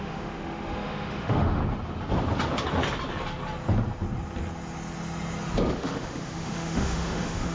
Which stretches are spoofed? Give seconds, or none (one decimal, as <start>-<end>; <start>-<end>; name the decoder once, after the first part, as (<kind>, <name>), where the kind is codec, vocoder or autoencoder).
0.0-1.6 (autoencoder, DAC-VAE); 5.7-7.5